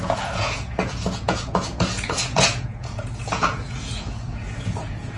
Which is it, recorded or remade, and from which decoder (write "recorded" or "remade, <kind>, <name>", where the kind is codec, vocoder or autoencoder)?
remade, vocoder, Vocos